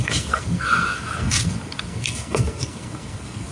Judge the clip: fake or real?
fake